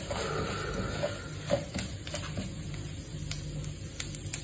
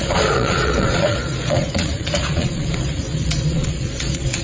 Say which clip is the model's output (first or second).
second